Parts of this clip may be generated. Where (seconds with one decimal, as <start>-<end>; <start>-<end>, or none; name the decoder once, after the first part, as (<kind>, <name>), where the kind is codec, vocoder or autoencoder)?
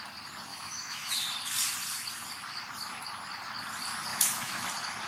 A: 0.5-1.1 (autoencoder, DAC-VAE); 4.1-4.6